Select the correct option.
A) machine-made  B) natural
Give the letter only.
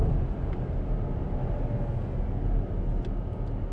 B